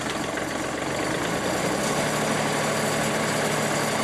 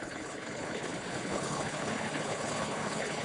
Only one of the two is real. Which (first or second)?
first